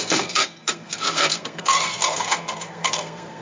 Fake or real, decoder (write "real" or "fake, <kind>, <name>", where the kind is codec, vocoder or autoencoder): fake, codec, SNAC